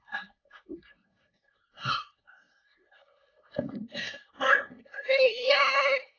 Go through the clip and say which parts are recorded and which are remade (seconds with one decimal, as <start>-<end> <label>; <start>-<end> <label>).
0.0-6.2 remade